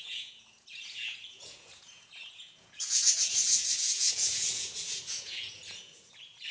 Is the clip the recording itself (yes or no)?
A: no